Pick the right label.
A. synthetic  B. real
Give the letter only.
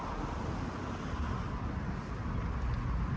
B